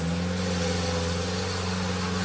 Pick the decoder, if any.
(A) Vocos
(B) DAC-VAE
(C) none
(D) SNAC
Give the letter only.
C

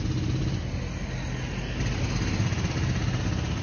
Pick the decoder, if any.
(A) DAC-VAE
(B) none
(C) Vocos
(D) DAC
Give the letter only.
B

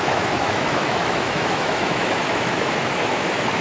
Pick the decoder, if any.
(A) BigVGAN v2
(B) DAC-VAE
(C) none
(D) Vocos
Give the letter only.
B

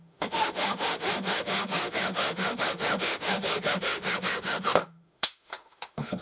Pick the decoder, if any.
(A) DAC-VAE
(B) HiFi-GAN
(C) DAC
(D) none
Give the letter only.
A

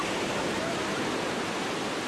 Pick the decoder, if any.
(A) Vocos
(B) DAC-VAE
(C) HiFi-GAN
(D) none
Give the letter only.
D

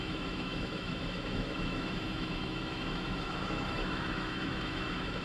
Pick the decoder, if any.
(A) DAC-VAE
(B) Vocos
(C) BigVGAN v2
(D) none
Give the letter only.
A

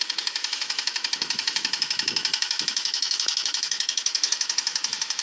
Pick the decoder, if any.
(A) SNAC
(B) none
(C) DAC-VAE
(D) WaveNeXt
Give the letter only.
C